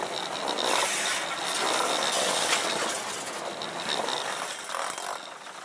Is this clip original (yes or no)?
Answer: yes